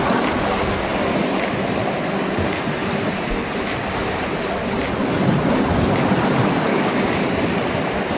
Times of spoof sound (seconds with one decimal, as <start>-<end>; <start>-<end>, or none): 6.7-7.2